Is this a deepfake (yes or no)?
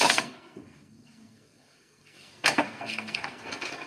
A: yes